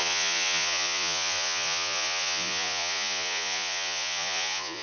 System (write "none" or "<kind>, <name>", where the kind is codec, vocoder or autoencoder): vocoder, Vocos